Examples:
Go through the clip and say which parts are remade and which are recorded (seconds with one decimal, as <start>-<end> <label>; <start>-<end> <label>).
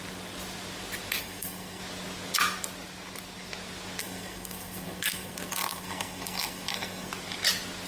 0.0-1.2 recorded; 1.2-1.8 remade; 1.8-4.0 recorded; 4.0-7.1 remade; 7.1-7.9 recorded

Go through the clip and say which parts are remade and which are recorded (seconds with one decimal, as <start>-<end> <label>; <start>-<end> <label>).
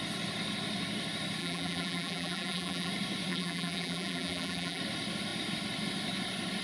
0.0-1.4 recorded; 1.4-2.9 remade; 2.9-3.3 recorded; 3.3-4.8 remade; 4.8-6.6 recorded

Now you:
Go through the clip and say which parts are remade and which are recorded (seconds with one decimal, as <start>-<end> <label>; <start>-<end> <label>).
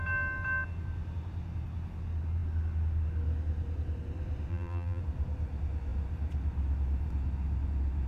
0.0-4.5 recorded; 4.5-5.0 remade; 5.0-8.1 recorded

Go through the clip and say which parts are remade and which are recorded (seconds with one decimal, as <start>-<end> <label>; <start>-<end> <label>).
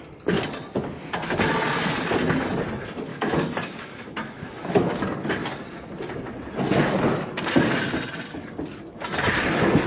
0.0-3.1 recorded; 3.1-5.0 remade; 5.0-9.9 recorded